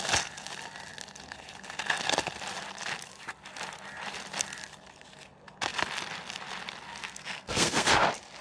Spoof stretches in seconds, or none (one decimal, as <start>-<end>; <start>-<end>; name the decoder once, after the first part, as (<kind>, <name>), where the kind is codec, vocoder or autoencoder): 7.0-7.9 (codec, SNAC)